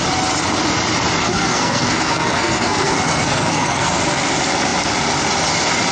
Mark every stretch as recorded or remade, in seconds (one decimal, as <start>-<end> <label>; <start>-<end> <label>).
0.0-1.2 recorded; 1.2-4.0 remade; 4.0-5.9 recorded